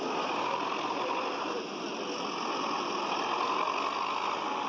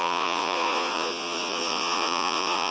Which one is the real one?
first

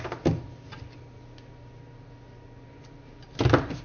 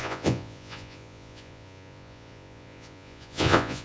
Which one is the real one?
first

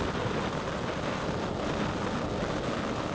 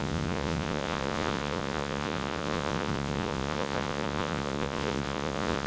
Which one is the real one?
first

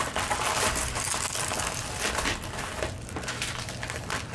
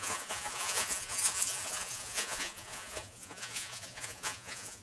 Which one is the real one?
first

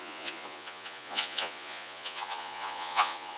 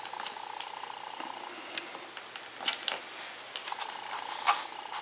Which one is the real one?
second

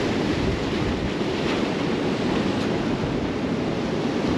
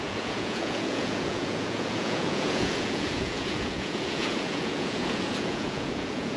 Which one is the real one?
first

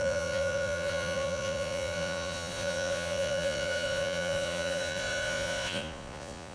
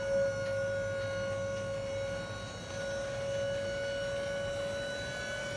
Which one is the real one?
second